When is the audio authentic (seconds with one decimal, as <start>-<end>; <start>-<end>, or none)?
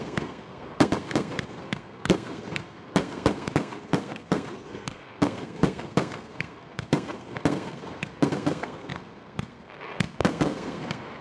none